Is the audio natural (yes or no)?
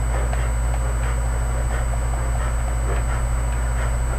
yes